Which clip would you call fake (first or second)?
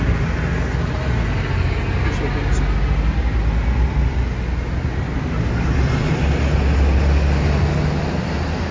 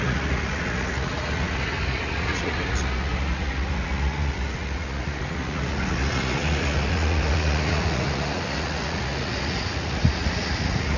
second